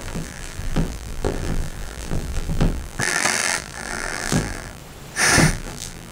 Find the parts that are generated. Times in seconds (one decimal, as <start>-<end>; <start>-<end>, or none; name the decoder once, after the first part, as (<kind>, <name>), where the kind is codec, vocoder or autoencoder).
0.0-4.8 (vocoder, BigVGAN v2); 5.5-6.1